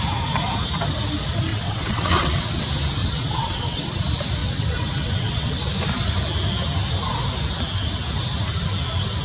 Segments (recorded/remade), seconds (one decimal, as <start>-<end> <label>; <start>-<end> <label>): 0.0-1.5 recorded; 1.5-2.6 remade; 2.6-3.0 recorded; 3.0-3.9 remade; 3.9-4.4 recorded; 4.4-5.6 remade; 5.6-9.2 recorded